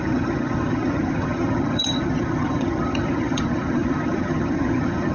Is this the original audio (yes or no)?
no